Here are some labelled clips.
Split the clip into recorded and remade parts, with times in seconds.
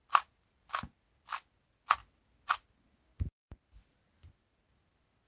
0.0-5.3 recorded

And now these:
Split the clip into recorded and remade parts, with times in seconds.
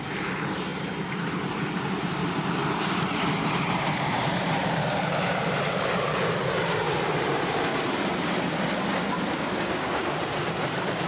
0.0-0.7 remade; 0.7-1.2 recorded; 1.2-2.2 remade; 2.2-2.8 recorded; 2.8-7.7 remade; 7.7-9.6 recorded; 9.6-11.1 remade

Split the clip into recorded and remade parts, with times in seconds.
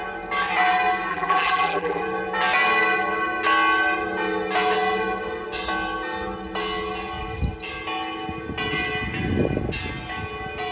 0.0-1.1 recorded; 1.1-2.0 remade; 2.0-10.7 recorded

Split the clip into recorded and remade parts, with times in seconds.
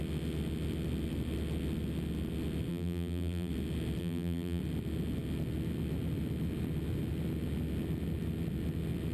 0.0-2.7 recorded; 2.7-3.5 remade; 3.5-4.0 recorded; 4.0-4.6 remade; 4.6-9.1 recorded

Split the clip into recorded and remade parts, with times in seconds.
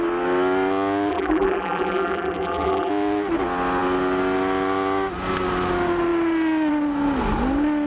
0.0-1.1 recorded; 1.1-2.9 remade; 2.9-7.9 recorded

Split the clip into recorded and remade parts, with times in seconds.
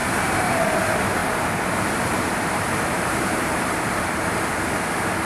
0.0-0.6 remade; 0.6-1.2 recorded; 1.2-4.4 remade; 4.4-5.3 recorded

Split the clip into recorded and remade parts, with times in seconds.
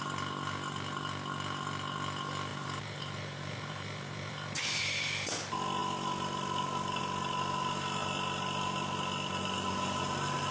0.0-2.5 recorded; 2.5-4.8 remade; 4.8-10.5 recorded